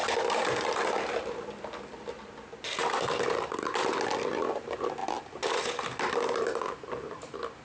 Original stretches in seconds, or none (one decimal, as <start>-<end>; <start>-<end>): 0.0-7.6

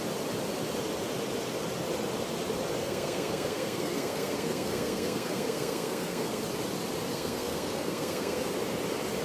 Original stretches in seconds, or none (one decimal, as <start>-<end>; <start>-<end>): 0.0-2.8; 6.4-7.1; 8.5-9.2

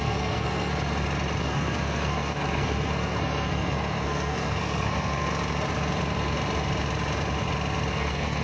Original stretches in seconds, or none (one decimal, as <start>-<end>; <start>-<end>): 0.7-1.4; 5.3-7.9

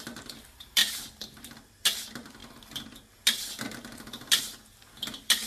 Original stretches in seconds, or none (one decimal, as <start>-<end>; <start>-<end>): 0.0-5.5